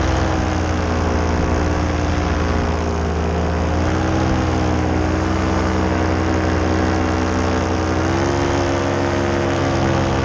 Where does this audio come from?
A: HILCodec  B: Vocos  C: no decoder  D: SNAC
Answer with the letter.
C